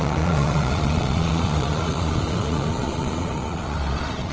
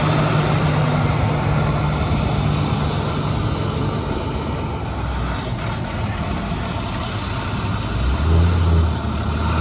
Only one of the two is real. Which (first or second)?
second